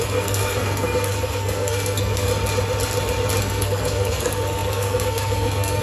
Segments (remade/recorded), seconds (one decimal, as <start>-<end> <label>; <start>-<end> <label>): 0.0-2.3 remade; 2.3-3.4 recorded; 3.4-5.8 remade